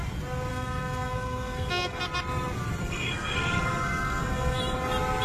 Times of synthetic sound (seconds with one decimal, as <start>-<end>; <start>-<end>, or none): 0.5-2.0; 2.8-4.6